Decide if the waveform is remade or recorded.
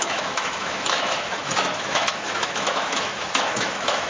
remade